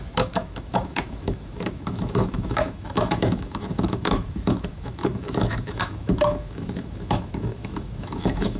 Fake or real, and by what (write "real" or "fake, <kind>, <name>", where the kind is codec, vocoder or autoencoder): fake, autoencoder, DAC-VAE